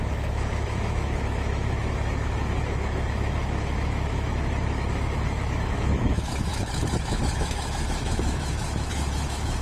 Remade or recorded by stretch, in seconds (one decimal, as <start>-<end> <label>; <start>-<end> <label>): 0.0-9.6 remade